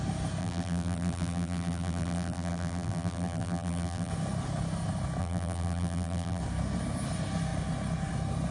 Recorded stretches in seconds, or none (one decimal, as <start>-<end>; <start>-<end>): 0.0-0.4; 4.1-5.2; 6.4-8.5